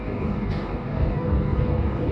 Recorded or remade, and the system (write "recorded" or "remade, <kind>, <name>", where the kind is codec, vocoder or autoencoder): remade, codec, DAC